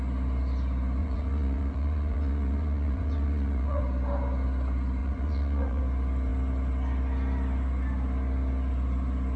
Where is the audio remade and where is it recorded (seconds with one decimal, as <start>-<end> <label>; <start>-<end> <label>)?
0.0-1.0 recorded; 1.0-3.8 remade; 3.8-5.0 recorded; 5.0-5.8 remade; 5.8-9.4 recorded